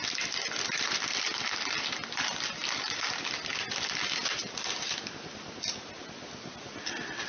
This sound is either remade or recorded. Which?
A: recorded